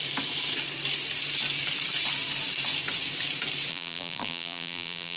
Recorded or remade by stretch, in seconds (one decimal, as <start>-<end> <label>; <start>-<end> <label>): 0.0-3.7 recorded; 3.7-5.2 remade